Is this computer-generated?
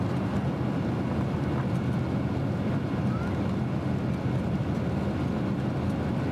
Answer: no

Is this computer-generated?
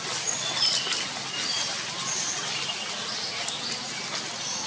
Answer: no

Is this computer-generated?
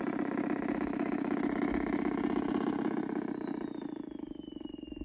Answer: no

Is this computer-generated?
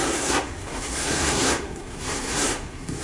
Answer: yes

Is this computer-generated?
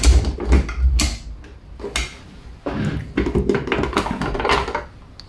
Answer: no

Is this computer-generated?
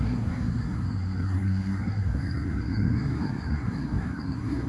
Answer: yes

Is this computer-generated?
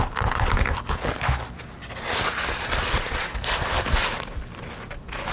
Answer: no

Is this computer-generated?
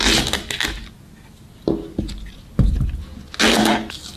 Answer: no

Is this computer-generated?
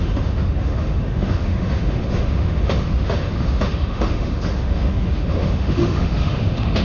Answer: yes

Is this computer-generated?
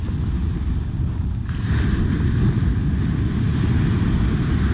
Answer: no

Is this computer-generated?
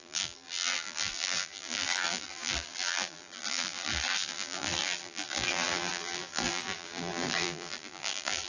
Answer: yes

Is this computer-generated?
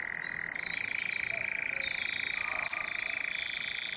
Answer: no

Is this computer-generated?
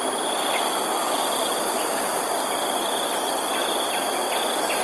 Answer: no